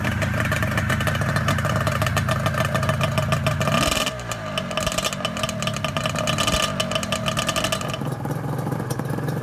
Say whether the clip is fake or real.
real